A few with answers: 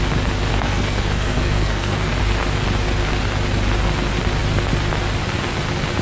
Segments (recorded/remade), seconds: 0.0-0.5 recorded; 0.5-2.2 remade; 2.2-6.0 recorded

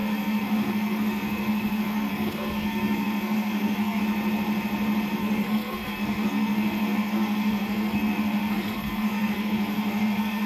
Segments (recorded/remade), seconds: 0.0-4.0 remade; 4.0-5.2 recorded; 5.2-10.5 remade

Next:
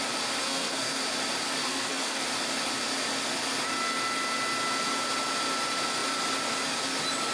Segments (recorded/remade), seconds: 0.0-0.4 recorded; 0.4-1.0 remade; 1.0-1.6 recorded; 1.6-2.2 remade; 2.2-7.3 recorded

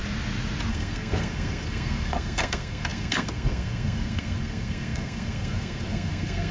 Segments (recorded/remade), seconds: 0.0-0.7 recorded; 0.7-6.5 remade

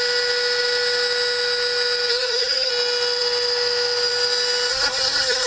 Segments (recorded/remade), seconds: 0.0-2.1 recorded; 2.1-2.7 remade; 2.7-4.7 recorded; 4.7-5.5 remade

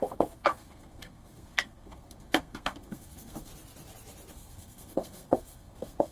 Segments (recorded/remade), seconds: 0.0-3.5 remade; 3.5-4.3 recorded; 4.3-6.1 remade

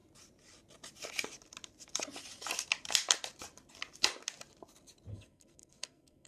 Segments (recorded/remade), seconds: 0.0-5.1 recorded; 5.1-6.3 remade